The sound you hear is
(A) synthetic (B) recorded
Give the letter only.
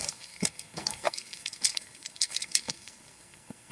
A